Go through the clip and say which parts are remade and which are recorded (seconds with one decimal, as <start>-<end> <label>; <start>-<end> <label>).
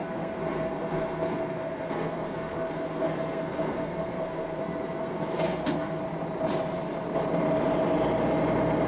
0.0-6.0 remade; 6.0-8.9 recorded